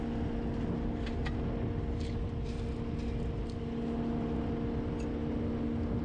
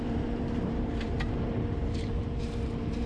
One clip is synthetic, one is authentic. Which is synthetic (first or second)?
second